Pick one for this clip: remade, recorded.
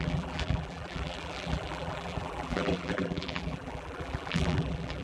remade